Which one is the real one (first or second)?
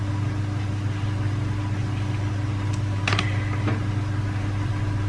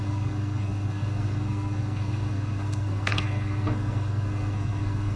first